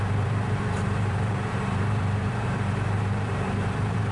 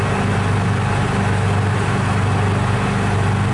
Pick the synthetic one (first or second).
first